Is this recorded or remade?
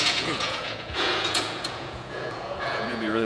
remade